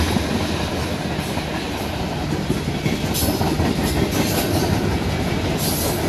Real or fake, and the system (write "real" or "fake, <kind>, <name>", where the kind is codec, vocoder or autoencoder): real